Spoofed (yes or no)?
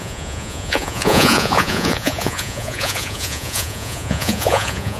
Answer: yes